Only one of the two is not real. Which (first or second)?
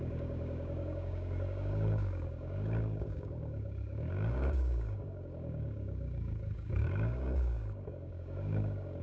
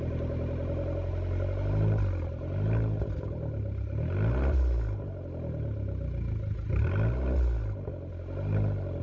first